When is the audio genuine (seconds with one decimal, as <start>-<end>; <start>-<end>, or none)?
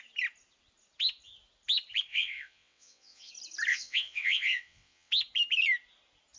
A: 0.0-2.1; 3.3-3.7; 5.1-6.4